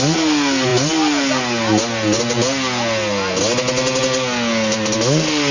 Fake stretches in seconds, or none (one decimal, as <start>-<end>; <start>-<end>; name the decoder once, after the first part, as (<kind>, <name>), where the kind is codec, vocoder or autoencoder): none